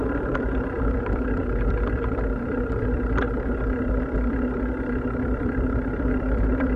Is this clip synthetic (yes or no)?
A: yes